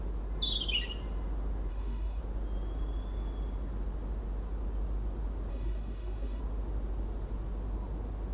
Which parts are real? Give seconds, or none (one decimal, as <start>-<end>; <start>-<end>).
0.0-1.7; 2.2-5.5; 6.4-8.3